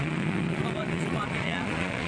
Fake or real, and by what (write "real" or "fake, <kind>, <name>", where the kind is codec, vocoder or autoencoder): fake, vocoder, Vocos